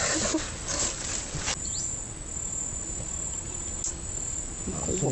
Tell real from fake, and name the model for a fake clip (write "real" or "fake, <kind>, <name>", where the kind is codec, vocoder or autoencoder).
real